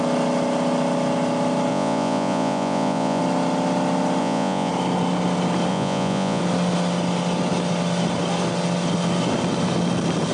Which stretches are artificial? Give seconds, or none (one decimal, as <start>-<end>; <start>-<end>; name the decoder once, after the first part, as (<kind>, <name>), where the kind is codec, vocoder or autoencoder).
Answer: 1.7-3.2 (vocoder, Vocos); 4.2-4.7; 5.7-6.4